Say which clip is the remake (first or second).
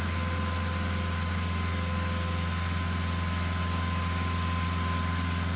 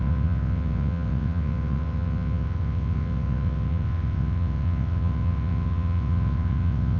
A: second